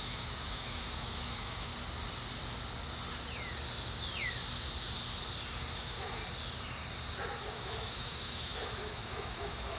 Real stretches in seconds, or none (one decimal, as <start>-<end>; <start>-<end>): 1.7-5.7; 6.2-7.5